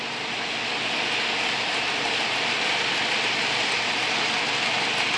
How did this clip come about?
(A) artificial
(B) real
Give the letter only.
B